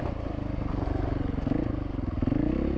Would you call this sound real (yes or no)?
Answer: yes